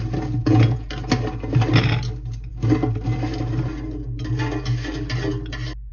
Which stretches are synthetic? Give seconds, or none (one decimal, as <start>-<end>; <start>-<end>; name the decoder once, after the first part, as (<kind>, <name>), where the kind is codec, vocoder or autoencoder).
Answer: 0.4-0.9 (vocoder, Vocos)